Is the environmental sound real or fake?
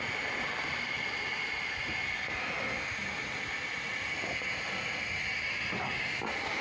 real